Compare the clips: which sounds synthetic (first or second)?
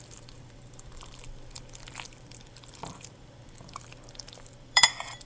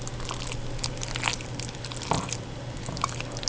first